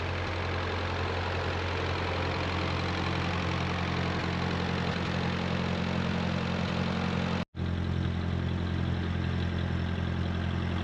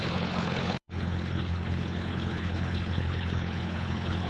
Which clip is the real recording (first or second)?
first